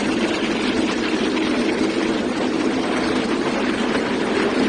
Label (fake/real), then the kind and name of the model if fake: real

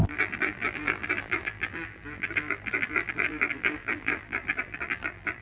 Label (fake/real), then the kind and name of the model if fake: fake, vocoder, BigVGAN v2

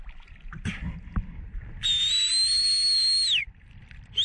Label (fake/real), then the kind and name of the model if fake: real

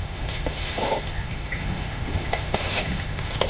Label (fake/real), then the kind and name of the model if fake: fake, autoencoder, DAC-VAE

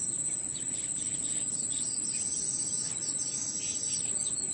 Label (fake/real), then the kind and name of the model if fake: real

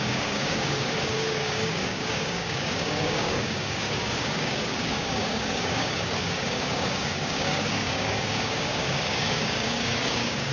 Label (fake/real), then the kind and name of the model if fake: fake, codec, DAC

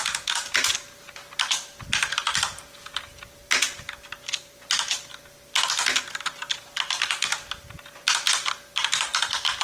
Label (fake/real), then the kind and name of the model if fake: real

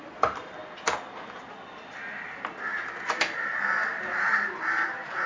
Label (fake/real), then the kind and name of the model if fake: real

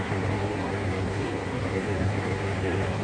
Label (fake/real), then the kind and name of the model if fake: fake, codec, SNAC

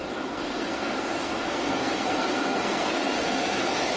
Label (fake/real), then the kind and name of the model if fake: fake, codec, SNAC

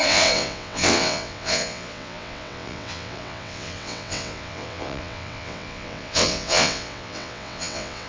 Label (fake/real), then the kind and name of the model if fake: fake, vocoder, WaveNeXt